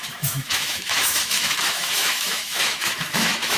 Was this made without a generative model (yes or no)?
no